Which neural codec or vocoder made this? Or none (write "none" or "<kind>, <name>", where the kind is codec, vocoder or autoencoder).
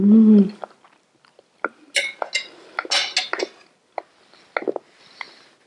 none